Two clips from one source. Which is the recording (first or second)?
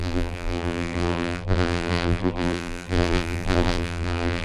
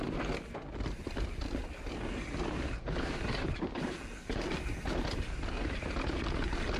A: second